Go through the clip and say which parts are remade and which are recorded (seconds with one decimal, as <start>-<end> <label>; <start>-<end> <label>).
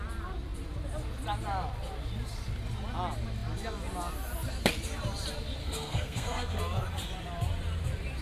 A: 0.0-5.6 recorded; 5.6-6.6 remade; 6.6-8.2 recorded